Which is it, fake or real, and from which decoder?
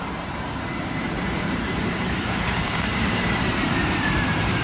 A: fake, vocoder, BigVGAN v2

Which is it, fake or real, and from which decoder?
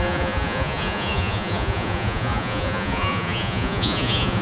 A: fake, vocoder, Vocos